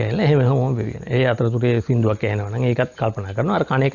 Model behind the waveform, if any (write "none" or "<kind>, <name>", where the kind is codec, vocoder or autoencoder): none